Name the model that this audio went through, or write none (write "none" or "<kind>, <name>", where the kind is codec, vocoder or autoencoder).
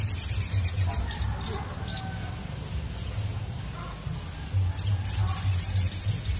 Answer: none